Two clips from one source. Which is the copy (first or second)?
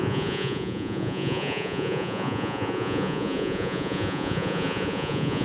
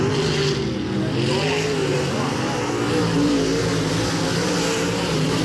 first